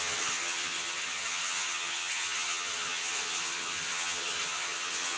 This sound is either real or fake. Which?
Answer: fake